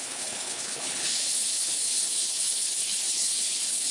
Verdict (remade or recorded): remade